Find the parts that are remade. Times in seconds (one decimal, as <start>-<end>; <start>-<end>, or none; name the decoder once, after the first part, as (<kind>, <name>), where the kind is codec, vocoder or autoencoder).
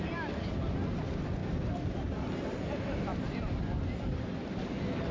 none